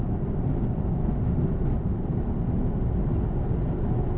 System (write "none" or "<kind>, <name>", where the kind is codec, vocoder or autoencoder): none